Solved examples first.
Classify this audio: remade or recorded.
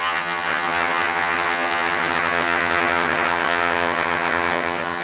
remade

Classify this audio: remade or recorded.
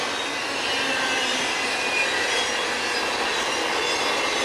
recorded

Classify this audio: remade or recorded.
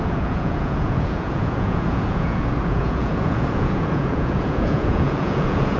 remade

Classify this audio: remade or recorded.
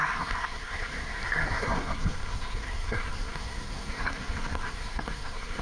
remade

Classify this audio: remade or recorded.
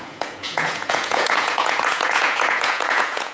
remade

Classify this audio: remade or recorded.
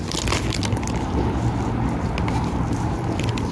recorded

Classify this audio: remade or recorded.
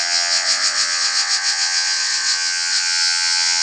remade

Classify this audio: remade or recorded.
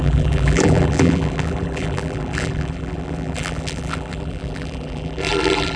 remade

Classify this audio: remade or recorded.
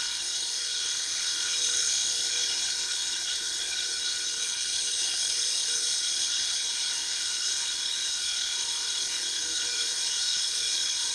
remade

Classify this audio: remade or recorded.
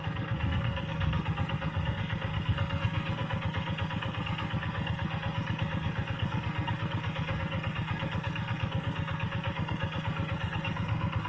remade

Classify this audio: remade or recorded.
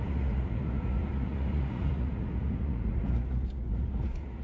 remade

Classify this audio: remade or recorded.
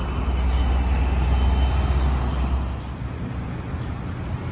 recorded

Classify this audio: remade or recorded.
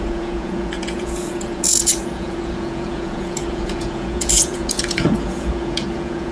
remade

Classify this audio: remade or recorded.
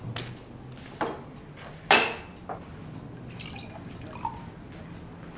recorded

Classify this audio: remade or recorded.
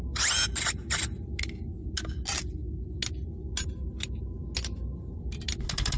recorded